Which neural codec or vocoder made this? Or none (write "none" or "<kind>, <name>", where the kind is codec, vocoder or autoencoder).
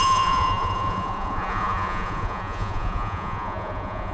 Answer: vocoder, Vocos